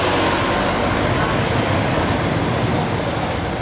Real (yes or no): yes